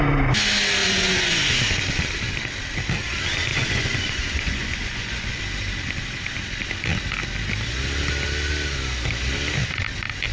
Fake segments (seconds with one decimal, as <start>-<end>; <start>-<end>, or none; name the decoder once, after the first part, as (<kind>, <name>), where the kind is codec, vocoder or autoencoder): 0.8-1.5 (vocoder, Vocos); 3.5-5.4